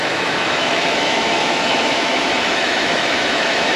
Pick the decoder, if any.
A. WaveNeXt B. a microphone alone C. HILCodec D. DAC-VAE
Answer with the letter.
D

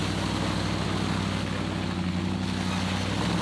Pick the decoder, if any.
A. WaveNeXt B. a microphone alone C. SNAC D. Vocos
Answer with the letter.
B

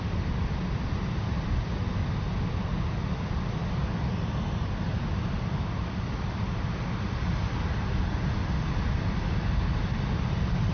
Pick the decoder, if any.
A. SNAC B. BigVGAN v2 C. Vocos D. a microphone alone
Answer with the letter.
D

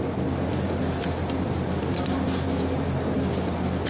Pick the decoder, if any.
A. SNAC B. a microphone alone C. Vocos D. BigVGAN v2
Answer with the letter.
B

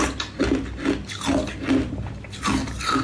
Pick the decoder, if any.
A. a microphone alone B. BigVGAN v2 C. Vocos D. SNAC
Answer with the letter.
A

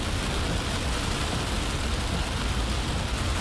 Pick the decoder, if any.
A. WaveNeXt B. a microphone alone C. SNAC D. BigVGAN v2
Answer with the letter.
B